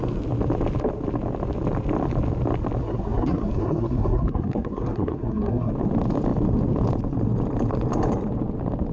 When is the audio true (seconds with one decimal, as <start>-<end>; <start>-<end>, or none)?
0.0-2.8; 5.7-8.9